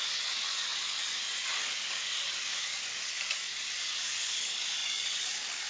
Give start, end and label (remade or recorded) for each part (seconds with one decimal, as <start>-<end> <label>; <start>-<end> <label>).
0.0-5.7 remade